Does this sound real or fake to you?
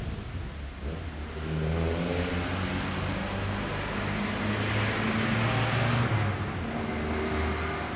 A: real